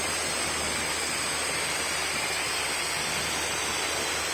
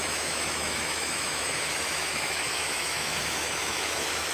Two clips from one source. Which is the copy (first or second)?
second